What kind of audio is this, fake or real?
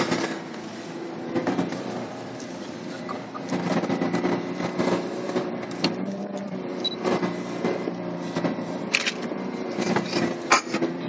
fake